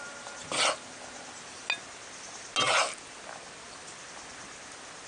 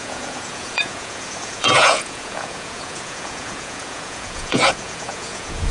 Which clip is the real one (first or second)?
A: first